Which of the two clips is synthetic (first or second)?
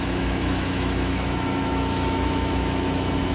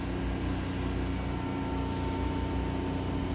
first